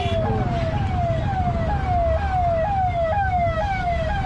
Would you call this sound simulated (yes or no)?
no